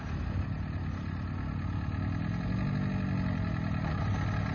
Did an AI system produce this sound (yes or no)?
no